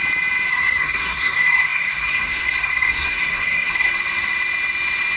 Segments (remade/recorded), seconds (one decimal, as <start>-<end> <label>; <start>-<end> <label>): 0.0-0.5 recorded; 0.5-3.9 remade; 3.9-5.2 recorded